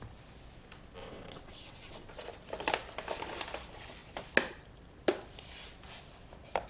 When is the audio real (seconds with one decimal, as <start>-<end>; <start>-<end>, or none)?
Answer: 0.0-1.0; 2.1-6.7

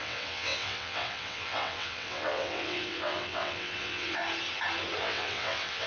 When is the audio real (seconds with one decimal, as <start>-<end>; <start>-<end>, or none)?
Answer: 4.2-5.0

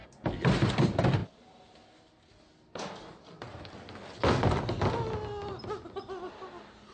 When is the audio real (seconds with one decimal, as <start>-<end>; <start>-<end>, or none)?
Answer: 0.0-6.9

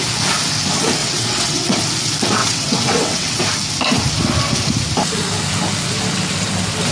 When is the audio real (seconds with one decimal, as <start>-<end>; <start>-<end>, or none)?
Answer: 0.0-1.0; 1.8-2.4; 3.4-6.9

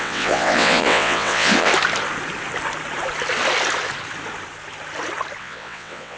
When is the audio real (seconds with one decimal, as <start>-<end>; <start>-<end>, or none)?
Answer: 1.7-5.4

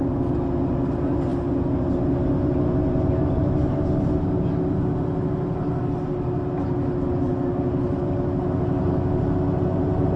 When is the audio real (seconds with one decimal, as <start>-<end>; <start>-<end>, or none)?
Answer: 0.0-10.2